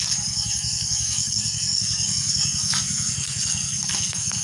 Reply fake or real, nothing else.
fake